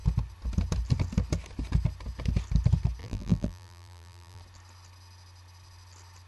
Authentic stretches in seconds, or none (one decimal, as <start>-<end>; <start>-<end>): 0.0-3.0; 4.4-6.3